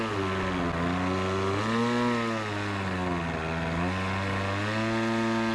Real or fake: real